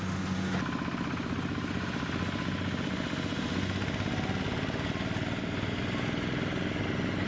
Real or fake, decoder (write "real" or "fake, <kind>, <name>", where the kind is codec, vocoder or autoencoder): real